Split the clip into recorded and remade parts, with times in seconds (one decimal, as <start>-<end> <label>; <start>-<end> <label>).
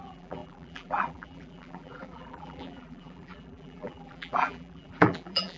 0.0-5.6 remade